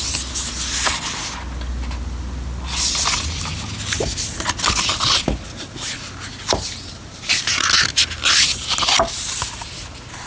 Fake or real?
real